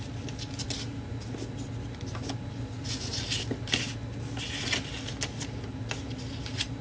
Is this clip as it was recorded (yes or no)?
yes